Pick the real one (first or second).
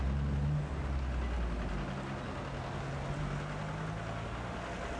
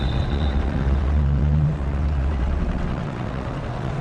first